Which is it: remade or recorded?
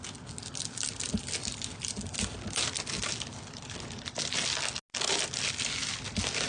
recorded